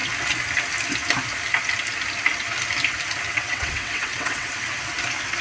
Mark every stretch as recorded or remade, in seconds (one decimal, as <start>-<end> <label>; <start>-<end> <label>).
0.0-3.3 recorded; 3.3-4.5 remade; 4.5-5.4 recorded